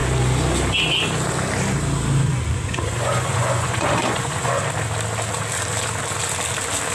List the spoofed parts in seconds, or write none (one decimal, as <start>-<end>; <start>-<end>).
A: 2.3-4.6